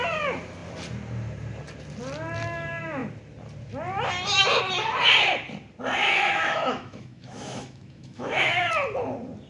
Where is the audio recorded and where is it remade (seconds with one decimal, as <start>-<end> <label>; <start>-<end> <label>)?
0.0-6.0 recorded; 6.0-8.7 remade; 8.7-9.5 recorded